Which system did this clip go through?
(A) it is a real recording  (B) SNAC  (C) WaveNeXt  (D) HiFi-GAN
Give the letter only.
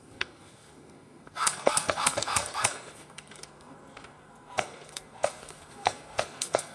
B